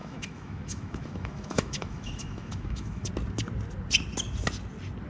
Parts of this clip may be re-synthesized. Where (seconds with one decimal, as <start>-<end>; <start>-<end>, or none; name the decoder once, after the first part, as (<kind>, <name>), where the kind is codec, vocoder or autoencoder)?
0.0-3.1 (autoencoder, DAC-VAE)